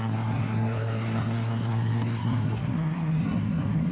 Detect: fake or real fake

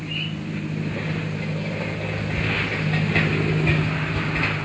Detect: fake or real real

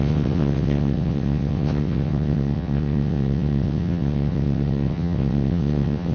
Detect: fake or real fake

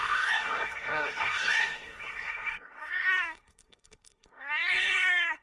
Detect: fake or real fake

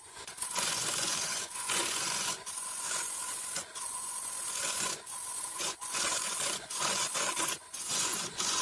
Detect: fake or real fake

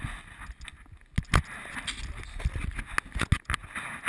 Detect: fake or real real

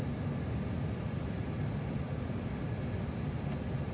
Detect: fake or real real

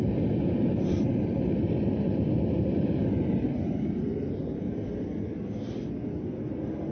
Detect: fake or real real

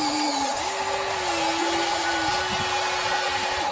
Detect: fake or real real